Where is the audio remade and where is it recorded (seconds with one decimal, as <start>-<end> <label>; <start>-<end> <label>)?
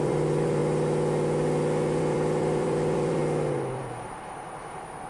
0.0-0.6 remade; 0.6-2.0 recorded; 2.0-3.2 remade; 3.2-3.8 recorded; 3.8-5.1 remade